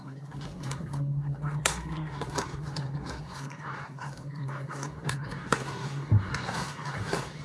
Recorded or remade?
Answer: remade